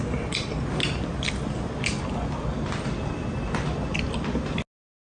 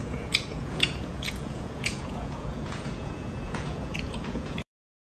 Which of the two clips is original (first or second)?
first